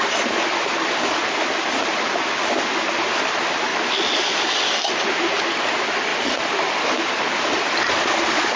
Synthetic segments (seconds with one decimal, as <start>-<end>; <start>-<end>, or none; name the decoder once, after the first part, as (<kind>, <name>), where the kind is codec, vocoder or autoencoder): none